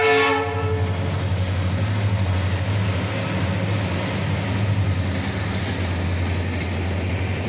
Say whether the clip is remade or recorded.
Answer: recorded